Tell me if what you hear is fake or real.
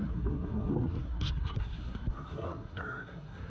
fake